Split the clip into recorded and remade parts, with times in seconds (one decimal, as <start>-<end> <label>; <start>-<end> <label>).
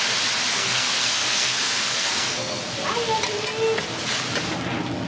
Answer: 0.0-0.5 recorded; 0.5-2.6 remade; 2.6-5.1 recorded